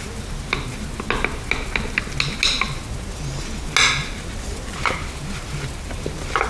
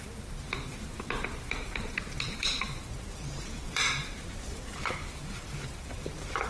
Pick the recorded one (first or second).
first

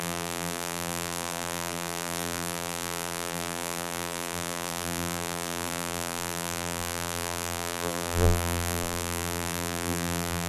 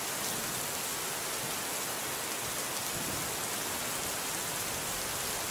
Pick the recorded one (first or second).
second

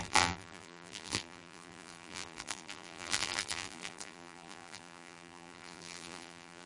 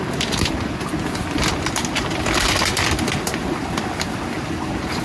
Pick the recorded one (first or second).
second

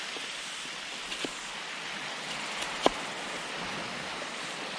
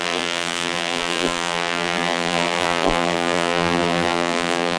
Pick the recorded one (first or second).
first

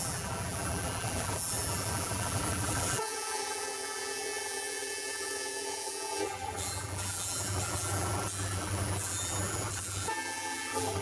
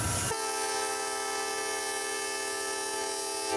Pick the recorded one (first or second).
second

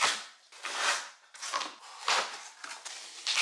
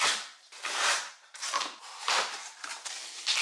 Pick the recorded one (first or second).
first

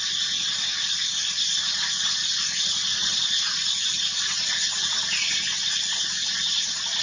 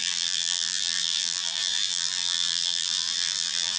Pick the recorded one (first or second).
first